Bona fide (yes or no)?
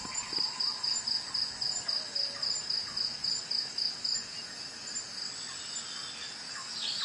yes